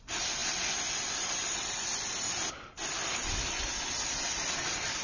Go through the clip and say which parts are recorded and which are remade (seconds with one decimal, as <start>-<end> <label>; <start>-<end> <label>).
0.0-5.0 recorded